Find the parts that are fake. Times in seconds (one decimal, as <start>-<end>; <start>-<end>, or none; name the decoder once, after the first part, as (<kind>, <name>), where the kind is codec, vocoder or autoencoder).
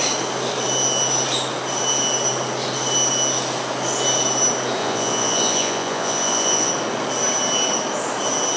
4.8-6.7 (vocoder, Vocos)